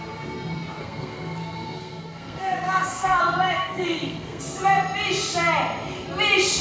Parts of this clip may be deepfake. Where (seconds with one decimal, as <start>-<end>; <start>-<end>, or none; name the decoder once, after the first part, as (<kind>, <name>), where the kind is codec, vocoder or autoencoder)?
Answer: 0.8-3.2 (codec, SNAC); 3.6-4.4